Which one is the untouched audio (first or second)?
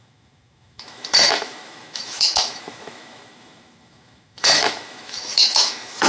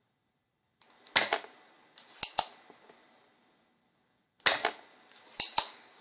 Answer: second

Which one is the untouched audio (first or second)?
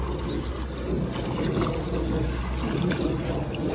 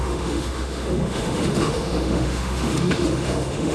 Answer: first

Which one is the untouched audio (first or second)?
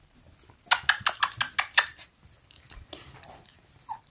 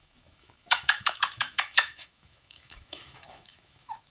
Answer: first